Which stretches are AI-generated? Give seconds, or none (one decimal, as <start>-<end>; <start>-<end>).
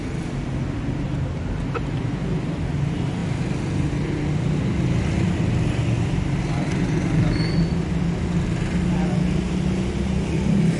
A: none